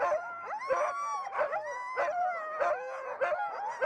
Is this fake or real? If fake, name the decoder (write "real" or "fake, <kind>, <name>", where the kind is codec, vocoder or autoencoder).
real